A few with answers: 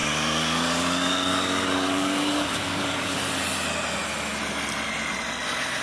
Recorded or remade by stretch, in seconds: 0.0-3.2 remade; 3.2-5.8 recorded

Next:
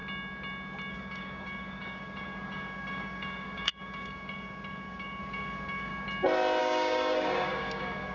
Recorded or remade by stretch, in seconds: 0.0-0.9 recorded; 0.9-5.9 remade; 5.9-6.6 recorded; 6.6-8.1 remade

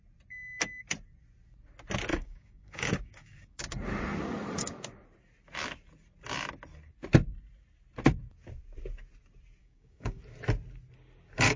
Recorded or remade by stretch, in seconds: 0.0-2.1 recorded; 2.1-3.6 remade; 3.6-9.6 recorded; 9.6-10.2 remade; 10.2-11.6 recorded

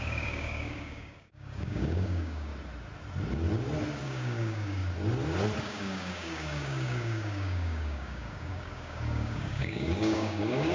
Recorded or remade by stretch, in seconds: 0.0-2.5 remade; 2.5-4.0 recorded; 4.0-4.8 remade; 4.8-5.6 recorded; 5.6-10.7 remade

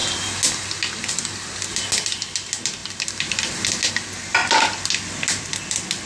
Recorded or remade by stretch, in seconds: 0.0-6.1 recorded